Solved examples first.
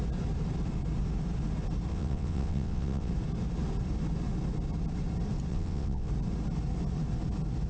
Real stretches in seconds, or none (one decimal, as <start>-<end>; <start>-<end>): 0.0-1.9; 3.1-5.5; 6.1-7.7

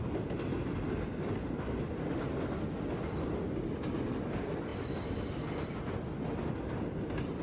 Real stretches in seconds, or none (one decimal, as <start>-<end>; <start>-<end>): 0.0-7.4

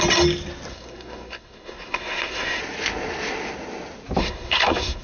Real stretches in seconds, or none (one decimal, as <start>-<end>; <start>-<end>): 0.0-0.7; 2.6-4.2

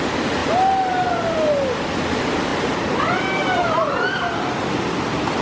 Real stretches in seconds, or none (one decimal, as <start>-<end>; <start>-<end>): 0.0-5.4

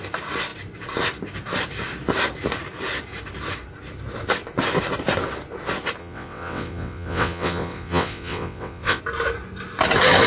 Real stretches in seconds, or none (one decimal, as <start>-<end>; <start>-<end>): 0.0-6.0; 9.0-10.3